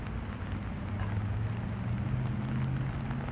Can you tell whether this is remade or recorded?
recorded